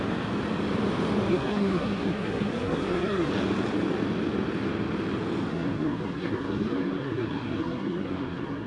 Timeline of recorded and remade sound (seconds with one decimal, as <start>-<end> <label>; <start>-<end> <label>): 0.0-1.3 recorded; 1.3-3.3 remade; 3.3-5.5 recorded; 5.5-8.7 remade